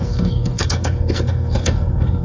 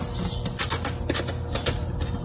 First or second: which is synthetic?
first